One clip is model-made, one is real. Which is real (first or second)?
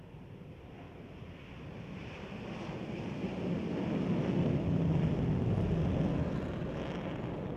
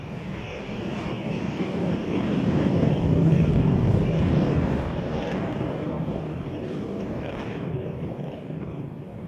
first